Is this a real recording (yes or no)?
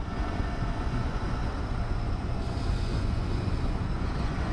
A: no